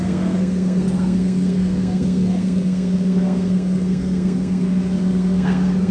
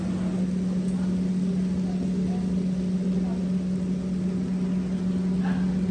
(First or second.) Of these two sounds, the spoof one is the first